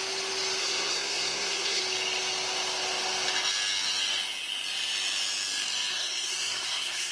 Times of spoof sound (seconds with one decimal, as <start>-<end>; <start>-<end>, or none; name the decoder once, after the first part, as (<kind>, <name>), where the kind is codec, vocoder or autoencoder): 0.6-1.8 (codec, SNAC); 5.9-7.1